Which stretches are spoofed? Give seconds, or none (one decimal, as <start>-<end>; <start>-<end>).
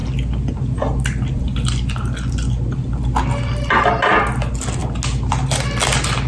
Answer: none